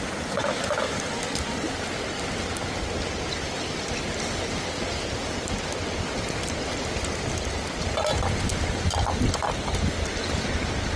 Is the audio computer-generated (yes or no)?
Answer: no